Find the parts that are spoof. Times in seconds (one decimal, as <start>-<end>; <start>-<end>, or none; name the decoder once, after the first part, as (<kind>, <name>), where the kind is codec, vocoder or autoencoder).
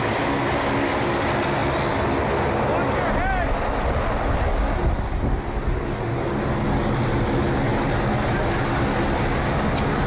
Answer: none